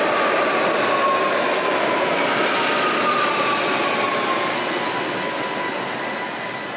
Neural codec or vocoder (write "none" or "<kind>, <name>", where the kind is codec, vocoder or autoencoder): none